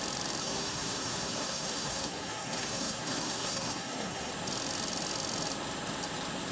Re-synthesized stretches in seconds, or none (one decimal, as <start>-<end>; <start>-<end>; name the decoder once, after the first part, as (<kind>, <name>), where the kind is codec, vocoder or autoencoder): 0.4-4.3 (codec, SNAC)